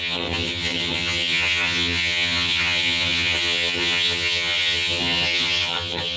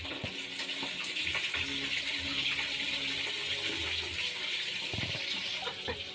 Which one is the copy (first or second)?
first